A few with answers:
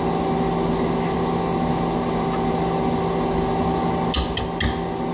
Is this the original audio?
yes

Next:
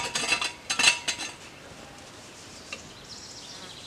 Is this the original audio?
yes